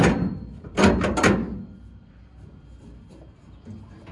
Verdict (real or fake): real